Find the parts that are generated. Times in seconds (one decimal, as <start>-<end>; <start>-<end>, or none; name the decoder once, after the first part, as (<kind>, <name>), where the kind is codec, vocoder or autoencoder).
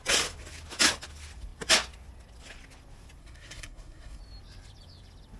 3.2-4.2 (codec, SNAC)